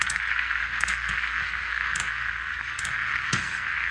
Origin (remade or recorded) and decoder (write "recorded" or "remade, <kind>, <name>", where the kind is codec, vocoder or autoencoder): remade, codec, SNAC